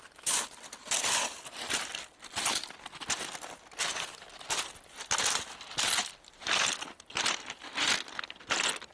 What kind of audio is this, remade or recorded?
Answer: recorded